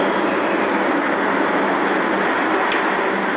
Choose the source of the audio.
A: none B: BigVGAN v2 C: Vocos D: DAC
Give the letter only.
A